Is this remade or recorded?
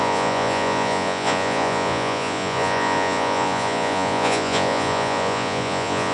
remade